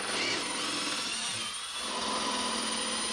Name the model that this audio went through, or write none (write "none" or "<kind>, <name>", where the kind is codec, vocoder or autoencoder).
none